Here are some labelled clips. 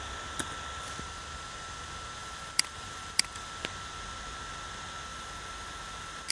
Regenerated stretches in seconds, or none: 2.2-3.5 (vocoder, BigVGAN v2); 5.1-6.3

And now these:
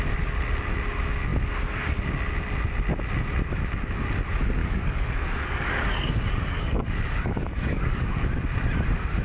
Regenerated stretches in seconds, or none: 4.6-8.3 (codec, DAC)

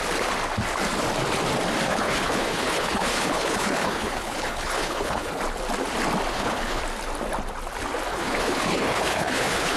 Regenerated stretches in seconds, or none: 1.9-5.4 (codec, HILCodec); 6.3-6.8; 8.1-9.8

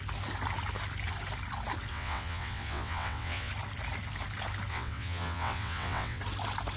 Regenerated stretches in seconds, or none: 1.9-3.5 (vocoder, WaveNeXt); 4.7-6.2